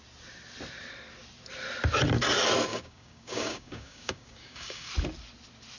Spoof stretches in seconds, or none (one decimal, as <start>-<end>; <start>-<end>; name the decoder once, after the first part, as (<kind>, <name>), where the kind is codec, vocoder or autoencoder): 2.7-4.9 (codec, DAC)